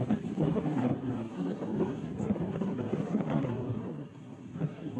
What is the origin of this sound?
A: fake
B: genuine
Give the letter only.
A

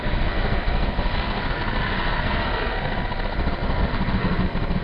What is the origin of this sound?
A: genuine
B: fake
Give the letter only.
B